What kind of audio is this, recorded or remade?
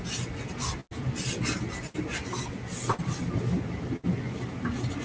recorded